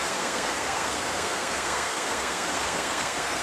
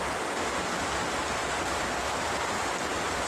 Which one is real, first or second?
second